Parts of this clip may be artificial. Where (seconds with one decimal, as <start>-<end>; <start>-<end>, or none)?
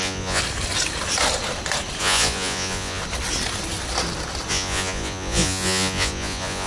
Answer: 0.0-0.4; 2.0-3.0; 4.5-6.7